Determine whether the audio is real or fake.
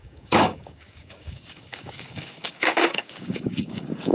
fake